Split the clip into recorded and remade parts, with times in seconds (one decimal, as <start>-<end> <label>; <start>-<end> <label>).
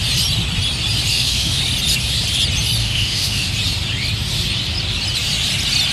0.0-1.1 recorded; 1.1-1.6 remade; 1.6-2.8 recorded; 2.8-3.5 remade; 3.5-5.9 recorded